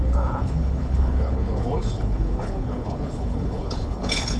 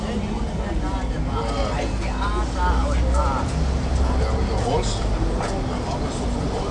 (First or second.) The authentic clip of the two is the second